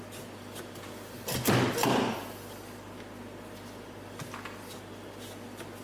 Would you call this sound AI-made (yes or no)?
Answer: no